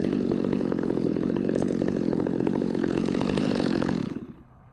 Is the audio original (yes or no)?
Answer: no